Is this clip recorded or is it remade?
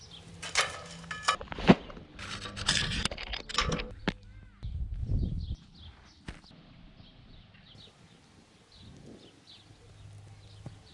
recorded